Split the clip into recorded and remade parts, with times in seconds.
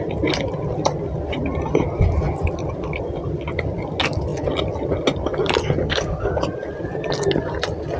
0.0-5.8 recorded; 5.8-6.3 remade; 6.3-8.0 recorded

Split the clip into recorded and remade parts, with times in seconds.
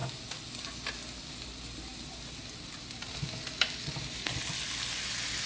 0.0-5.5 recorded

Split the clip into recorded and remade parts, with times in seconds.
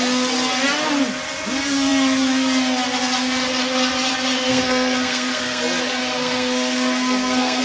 0.0-4.5 recorded; 4.5-5.6 remade; 5.6-6.0 recorded; 6.0-7.6 remade